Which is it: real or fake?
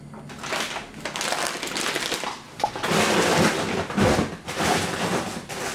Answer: real